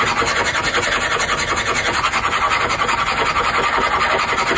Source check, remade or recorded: recorded